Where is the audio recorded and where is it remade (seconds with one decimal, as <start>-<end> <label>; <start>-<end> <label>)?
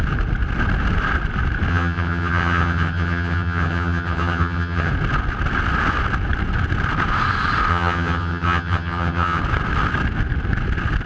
0.0-1.7 recorded; 1.7-4.9 remade; 4.9-7.7 recorded; 7.7-9.4 remade; 9.4-11.1 recorded